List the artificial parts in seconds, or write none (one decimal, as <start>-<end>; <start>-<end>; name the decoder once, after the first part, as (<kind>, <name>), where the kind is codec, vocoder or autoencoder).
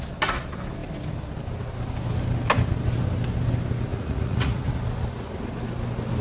3.9-4.7 (vocoder, Vocos)